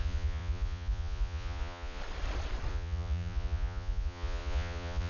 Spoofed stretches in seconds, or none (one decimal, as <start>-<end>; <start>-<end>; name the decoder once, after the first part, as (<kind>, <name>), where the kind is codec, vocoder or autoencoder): 0.0-2.0 (vocoder, Vocos); 2.7-5.1